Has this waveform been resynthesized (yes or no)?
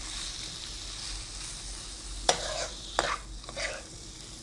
no